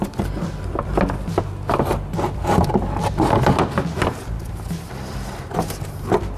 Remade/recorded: recorded